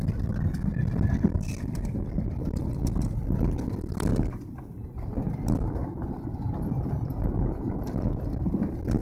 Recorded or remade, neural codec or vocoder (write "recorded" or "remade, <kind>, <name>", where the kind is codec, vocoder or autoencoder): remade, vocoder, BigVGAN v2